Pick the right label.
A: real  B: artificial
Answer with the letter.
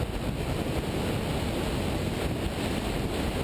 A